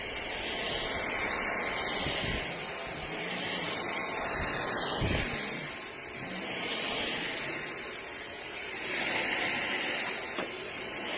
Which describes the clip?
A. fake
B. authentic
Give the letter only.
B